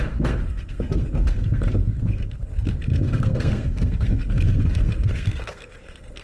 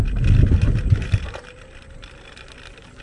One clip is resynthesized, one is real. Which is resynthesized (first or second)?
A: first